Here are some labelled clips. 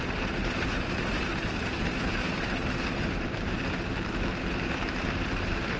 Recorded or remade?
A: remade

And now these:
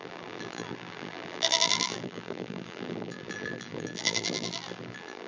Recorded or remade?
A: remade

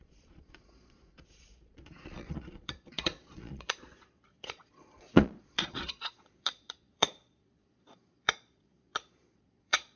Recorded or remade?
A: remade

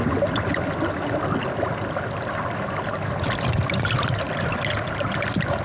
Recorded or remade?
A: recorded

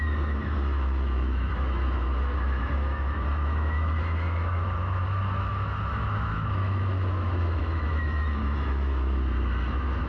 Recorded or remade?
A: remade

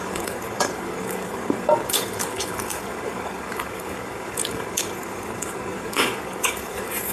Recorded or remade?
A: remade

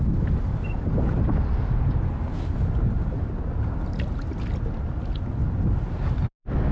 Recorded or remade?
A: recorded